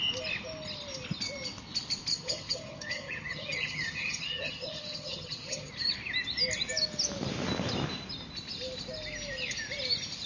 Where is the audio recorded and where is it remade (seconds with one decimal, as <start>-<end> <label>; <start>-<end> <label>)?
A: 0.0-2.1 recorded; 2.1-5.7 remade; 5.7-10.3 recorded